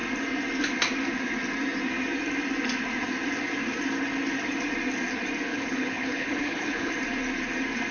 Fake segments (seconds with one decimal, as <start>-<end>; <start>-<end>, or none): 5.5-6.9